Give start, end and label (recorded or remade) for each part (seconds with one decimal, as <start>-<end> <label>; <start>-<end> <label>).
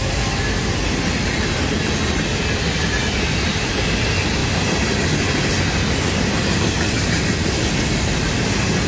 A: 0.0-8.9 recorded